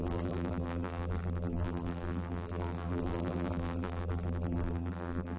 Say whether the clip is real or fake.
fake